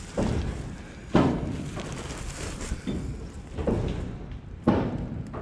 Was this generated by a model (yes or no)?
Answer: no